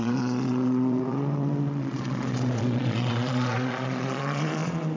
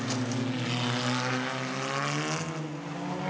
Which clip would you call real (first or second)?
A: second